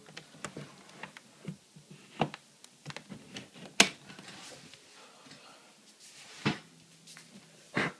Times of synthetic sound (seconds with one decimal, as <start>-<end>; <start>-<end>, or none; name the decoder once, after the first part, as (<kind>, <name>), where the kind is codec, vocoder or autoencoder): none